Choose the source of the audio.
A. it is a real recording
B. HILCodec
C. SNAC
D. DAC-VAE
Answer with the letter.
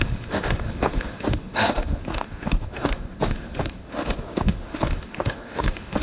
D